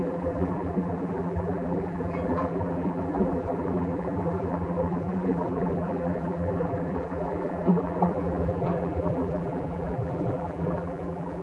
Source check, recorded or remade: remade